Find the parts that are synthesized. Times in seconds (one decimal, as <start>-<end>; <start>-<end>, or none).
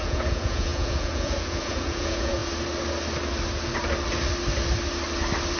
0.0-2.4